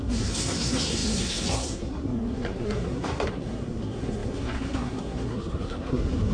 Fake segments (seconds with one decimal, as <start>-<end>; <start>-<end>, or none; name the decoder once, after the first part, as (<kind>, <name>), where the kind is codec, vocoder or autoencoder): 0.0-6.3 (codec, SNAC)